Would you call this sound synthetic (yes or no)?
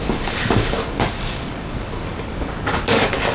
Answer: yes